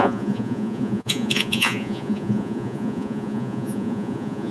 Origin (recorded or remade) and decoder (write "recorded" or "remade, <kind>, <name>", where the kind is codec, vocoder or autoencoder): remade, vocoder, Vocos